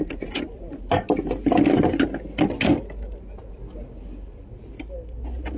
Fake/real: real